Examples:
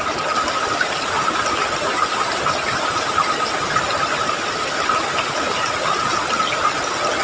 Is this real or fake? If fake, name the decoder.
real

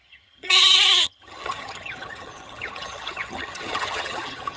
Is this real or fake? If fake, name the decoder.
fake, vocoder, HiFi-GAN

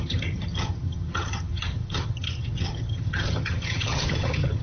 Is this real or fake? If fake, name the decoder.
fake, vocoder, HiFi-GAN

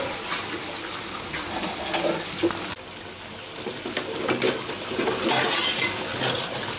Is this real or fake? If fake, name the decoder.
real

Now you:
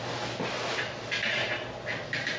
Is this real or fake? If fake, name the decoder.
real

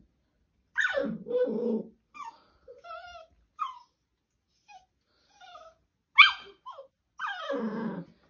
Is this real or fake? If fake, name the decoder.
real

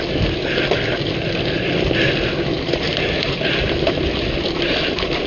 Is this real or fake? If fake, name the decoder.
real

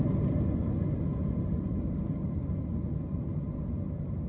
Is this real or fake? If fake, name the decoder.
real